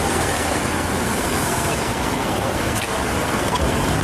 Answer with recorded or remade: remade